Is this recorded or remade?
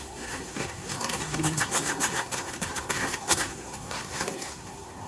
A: remade